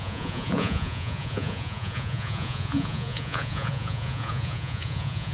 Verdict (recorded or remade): remade